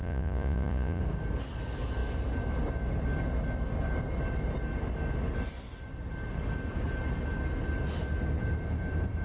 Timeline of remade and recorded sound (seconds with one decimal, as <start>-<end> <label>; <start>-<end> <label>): 0.0-1.0 remade; 1.0-9.2 recorded